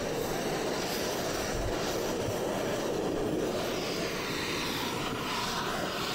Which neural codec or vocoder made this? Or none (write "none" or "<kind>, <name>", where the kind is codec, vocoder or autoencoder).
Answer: none